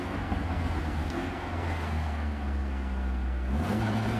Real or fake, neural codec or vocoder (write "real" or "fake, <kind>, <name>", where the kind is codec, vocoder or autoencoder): fake, codec, SNAC